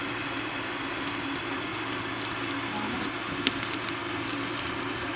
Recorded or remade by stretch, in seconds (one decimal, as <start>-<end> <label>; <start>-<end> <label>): 0.0-5.2 recorded